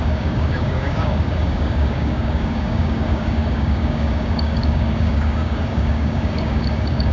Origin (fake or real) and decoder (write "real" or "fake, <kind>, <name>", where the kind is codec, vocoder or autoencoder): fake, codec, DAC